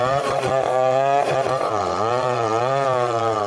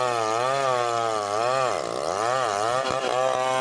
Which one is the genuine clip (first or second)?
second